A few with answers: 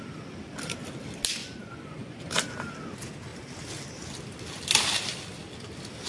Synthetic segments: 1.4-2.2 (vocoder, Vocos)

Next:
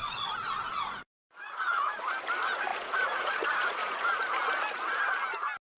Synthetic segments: 0.0-2.0 (vocoder, Vocos); 2.7-4.2

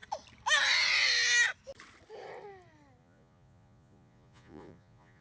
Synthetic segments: 3.0-5.2 (vocoder, Vocos)

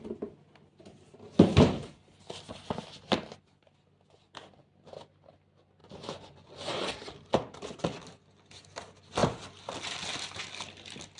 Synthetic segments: 5.8-6.9 (vocoder, Vocos)

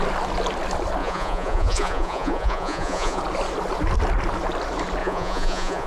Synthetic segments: 1.0-3.2 (vocoder, Vocos); 5.0-5.9

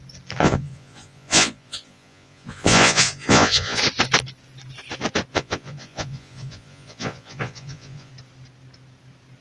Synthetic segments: 0.4-3.8 (vocoder, Vocos); 5.3-8.1

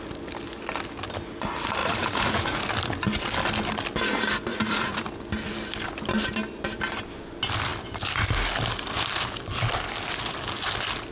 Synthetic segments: 1.8-2.6 (vocoder, Vocos); 4.5-5.0